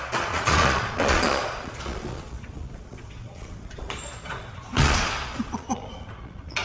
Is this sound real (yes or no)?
no